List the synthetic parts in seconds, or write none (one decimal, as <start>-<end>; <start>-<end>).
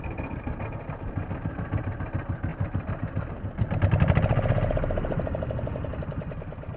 none